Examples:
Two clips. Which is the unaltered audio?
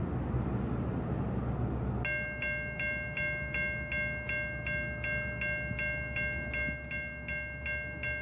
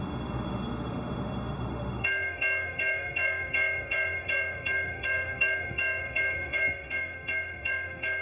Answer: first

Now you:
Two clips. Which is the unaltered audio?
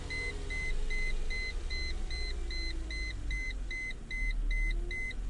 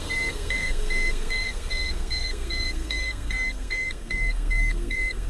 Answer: first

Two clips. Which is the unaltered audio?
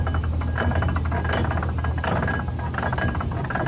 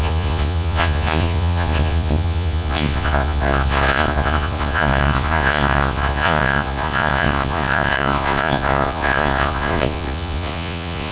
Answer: first